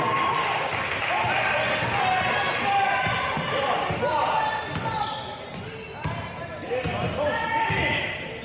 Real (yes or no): yes